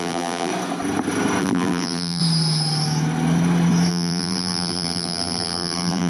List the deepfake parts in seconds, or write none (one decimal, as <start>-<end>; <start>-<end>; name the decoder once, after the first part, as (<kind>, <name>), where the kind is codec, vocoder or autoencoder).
0.0-0.5 (vocoder, BigVGAN v2); 1.4-2.2; 3.9-6.1